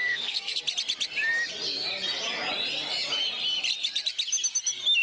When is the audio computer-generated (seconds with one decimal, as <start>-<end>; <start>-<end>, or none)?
0.0-0.6